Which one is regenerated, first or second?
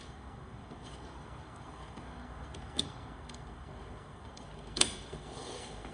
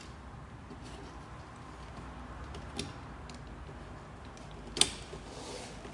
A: first